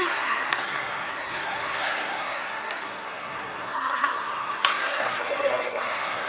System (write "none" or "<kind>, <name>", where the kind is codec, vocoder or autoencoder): codec, SNAC